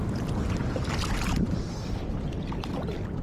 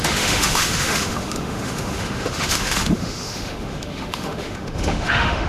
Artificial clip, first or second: second